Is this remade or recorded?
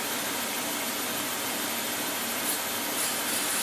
recorded